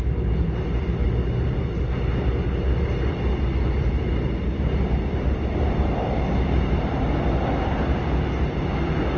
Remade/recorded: recorded